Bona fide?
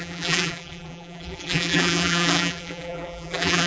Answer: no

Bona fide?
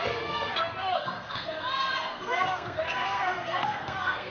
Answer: no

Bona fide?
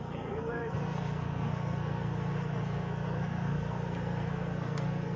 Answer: no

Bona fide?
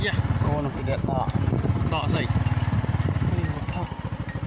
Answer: yes